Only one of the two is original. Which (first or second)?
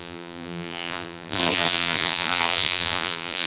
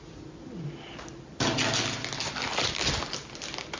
second